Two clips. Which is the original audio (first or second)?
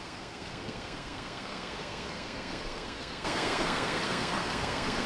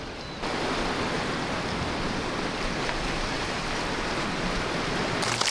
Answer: second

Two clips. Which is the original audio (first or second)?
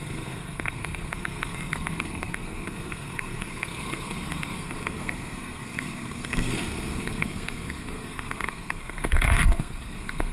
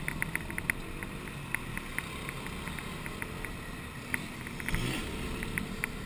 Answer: second